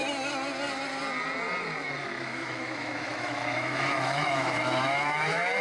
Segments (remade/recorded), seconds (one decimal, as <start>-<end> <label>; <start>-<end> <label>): 0.0-2.0 recorded; 2.0-5.6 remade